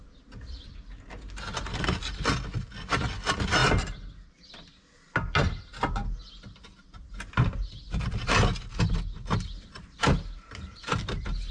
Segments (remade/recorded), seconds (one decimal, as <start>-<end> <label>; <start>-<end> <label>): 0.0-11.5 recorded